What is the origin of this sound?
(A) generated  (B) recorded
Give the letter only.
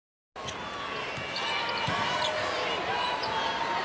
B